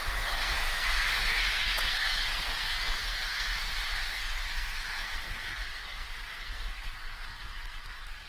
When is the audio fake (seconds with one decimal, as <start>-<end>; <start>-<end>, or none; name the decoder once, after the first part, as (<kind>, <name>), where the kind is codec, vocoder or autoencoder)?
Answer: 0.0-8.3 (codec, SNAC)

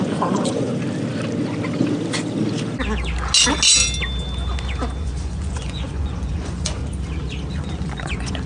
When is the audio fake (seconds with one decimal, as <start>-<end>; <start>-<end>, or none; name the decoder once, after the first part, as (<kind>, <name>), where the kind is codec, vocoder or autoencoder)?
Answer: 0.0-0.7 (vocoder, Vocos); 5.0-6.8; 7.6-8.5

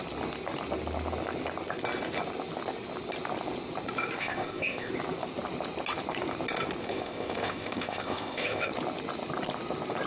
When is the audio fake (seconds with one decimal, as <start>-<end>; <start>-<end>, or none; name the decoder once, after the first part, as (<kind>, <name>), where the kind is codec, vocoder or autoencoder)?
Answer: 4.2-4.9 (codec, ZipCodec); 6.8-8.7